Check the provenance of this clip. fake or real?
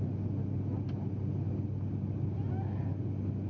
real